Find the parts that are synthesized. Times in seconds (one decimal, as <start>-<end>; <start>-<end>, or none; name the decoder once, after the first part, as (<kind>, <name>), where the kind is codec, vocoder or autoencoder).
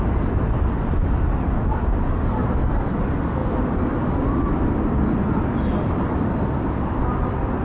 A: none